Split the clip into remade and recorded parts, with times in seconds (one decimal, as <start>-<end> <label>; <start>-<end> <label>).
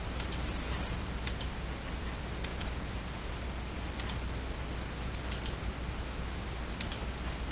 0.0-2.5 recorded; 2.5-3.3 remade; 3.3-7.5 recorded